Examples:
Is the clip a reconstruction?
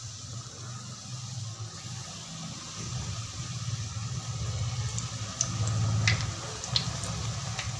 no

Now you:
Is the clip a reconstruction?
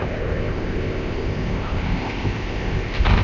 yes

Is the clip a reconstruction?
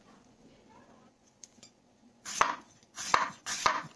yes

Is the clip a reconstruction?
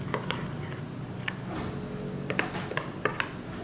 no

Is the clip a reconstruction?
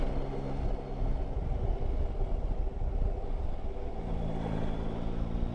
no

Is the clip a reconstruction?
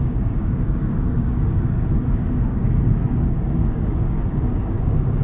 yes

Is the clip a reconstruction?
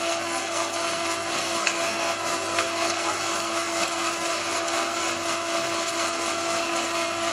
yes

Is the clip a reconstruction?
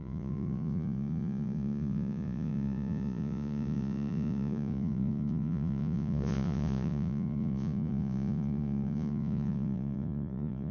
yes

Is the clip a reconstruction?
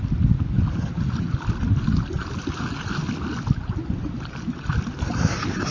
no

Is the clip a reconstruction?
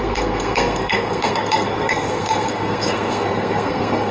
yes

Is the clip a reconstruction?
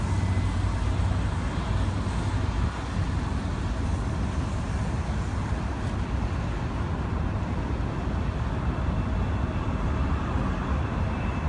no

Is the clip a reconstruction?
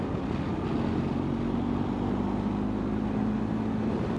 no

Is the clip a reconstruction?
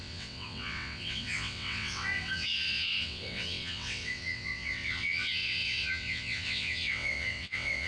yes